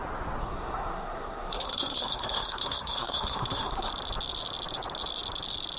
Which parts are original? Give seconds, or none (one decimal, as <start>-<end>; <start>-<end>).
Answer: 0.0-0.4; 3.9-5.8